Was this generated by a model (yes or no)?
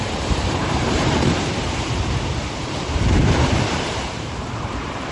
yes